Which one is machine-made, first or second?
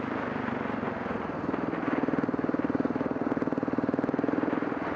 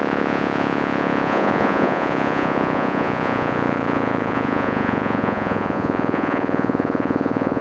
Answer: second